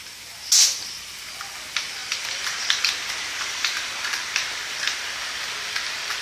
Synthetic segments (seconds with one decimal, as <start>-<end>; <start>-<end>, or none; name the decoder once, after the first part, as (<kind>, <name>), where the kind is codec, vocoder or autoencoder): 2.0-2.9 (vocoder, BigVGAN v2)